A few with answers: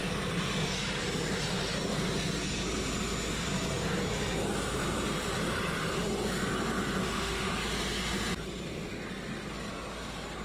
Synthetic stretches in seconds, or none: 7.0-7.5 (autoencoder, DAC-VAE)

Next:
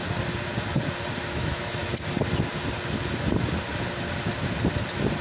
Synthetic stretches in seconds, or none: 1.3-1.8 (autoencoder, DAC-VAE)

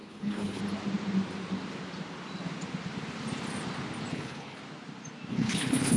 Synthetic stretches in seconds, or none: 0.0-0.6 (codec, HILCodec); 4.1-4.6; 5.3-6.0

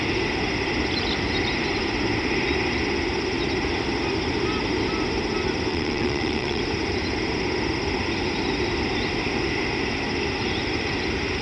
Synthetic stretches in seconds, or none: 5.7-6.6 (vocoder, Vocos)

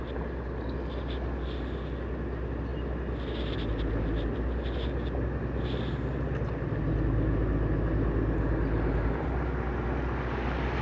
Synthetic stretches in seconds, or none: 2.7-3.5 (vocoder, BigVGAN v2)

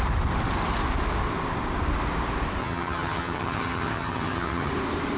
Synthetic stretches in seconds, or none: 2.6-4.7 (vocoder, HiFi-GAN)